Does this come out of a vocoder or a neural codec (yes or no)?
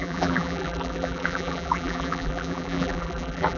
yes